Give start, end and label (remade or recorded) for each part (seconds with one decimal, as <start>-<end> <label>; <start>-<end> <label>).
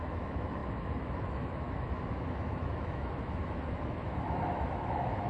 0.0-5.3 remade